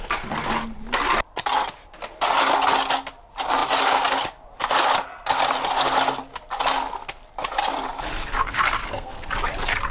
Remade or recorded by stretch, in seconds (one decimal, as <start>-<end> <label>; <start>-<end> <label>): 0.0-8.8 recorded; 8.8-9.3 remade; 9.3-9.9 recorded